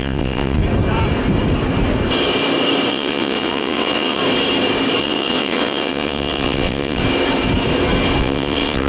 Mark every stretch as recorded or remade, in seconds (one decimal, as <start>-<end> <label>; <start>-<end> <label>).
0.0-0.6 remade; 0.6-2.9 recorded; 2.9-4.2 remade; 4.2-5.0 recorded; 5.0-7.0 remade; 7.0-8.2 recorded; 8.2-8.9 remade